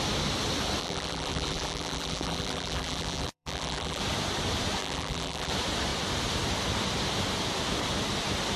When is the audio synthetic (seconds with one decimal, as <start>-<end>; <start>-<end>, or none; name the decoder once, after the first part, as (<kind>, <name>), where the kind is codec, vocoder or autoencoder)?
0.8-4.0 (vocoder, BigVGAN v2); 4.8-5.5